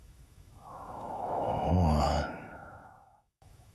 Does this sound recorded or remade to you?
remade